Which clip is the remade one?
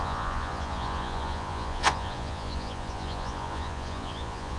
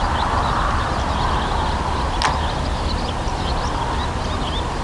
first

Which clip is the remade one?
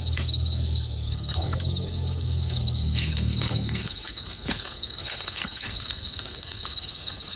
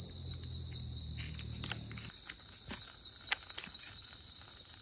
first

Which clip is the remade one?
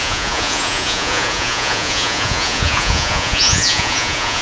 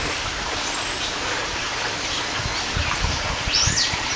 first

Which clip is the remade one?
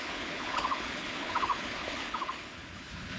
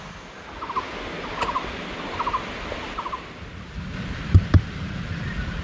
first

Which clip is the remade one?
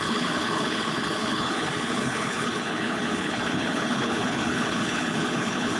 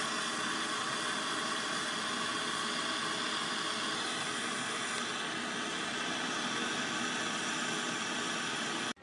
first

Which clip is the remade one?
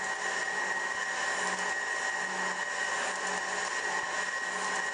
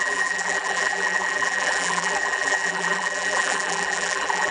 second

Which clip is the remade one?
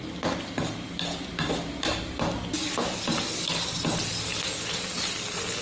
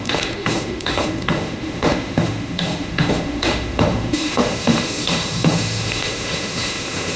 second